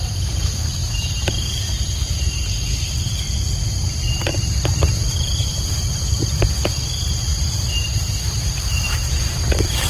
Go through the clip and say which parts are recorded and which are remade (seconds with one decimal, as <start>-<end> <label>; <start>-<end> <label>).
0.0-0.8 remade; 0.8-4.2 recorded; 4.2-9.9 remade